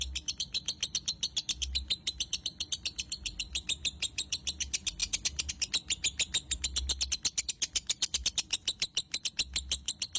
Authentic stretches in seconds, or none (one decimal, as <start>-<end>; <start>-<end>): 0.0-10.2